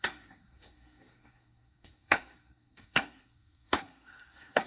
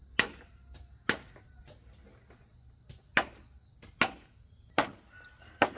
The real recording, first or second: second